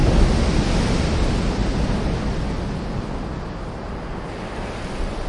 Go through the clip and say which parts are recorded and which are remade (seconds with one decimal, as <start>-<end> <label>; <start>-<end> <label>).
0.0-1.0 recorded; 1.0-1.6 remade; 1.6-4.8 recorded; 4.8-5.3 remade